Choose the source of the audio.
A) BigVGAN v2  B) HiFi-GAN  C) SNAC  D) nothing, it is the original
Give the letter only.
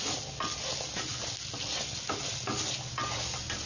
D